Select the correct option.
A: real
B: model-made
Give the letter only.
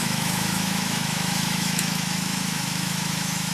B